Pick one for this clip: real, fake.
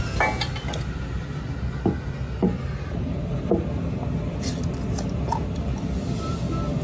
real